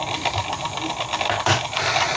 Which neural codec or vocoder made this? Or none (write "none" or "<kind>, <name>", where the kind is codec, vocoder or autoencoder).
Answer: none